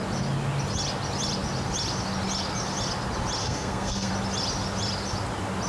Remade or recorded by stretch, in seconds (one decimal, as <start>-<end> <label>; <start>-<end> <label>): 0.0-3.4 recorded; 3.4-4.1 remade; 4.1-5.7 recorded